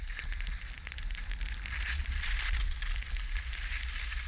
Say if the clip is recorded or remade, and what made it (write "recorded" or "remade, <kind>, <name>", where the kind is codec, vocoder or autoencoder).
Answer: recorded